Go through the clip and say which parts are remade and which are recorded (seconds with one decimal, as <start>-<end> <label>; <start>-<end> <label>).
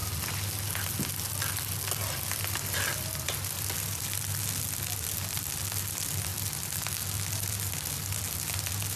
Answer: 0.0-9.0 recorded